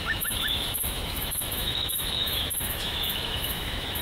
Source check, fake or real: fake